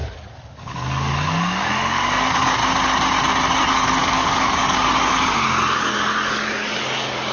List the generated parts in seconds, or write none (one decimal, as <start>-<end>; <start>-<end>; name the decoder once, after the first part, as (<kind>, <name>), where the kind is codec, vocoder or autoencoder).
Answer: 0.0-2.6 (codec, DAC); 3.6-7.3